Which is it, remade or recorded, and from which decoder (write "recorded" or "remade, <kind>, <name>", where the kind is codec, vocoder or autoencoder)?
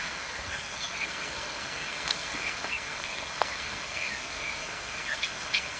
remade, codec, SNAC